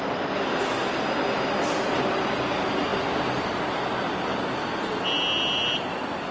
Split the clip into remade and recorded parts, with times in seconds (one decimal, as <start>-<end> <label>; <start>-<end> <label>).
0.0-6.3 recorded